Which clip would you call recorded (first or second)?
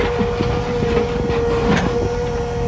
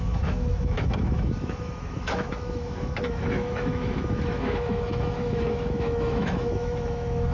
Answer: first